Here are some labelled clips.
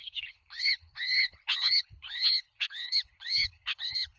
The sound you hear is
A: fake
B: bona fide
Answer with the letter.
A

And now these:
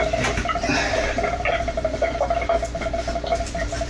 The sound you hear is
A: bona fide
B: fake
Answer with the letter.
A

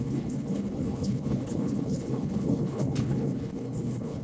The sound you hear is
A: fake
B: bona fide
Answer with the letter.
A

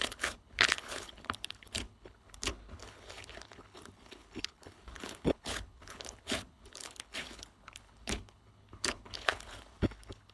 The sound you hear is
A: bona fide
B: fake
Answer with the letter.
B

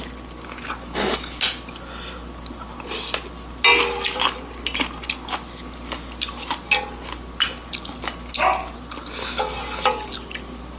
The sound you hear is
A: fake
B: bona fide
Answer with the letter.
B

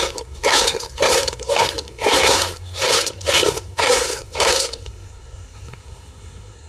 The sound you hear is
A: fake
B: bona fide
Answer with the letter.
A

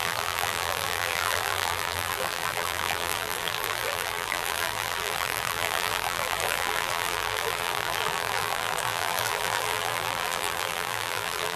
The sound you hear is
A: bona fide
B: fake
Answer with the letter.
B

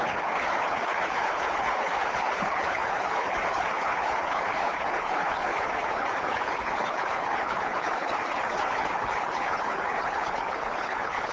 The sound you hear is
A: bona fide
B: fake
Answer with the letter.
B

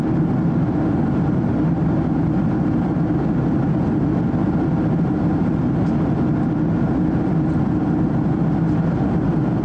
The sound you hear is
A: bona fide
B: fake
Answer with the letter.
A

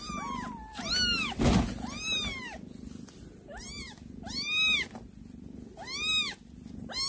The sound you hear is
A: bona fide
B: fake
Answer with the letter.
A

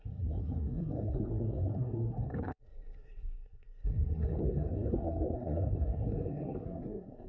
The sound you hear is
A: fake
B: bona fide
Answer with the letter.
A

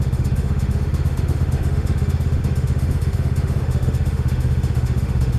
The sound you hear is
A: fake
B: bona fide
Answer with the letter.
A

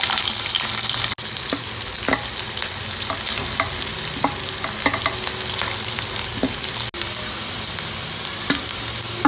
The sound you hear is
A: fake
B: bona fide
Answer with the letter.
B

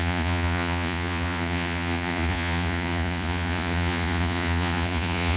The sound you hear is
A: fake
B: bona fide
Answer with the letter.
A